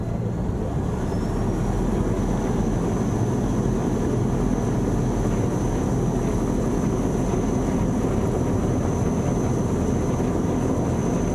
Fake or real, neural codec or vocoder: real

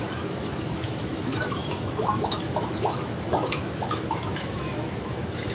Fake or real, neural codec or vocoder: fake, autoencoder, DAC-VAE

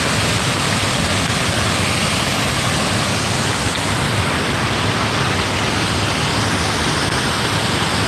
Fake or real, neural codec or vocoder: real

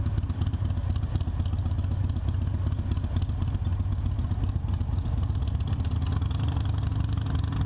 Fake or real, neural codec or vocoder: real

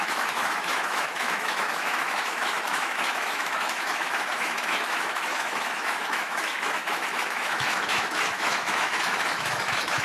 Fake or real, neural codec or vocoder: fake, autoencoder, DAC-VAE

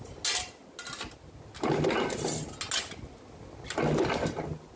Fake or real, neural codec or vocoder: real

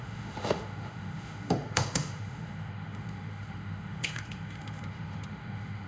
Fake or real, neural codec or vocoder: fake, autoencoder, DAC-VAE